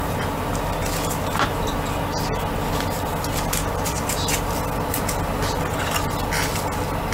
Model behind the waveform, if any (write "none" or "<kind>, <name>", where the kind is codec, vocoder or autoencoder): none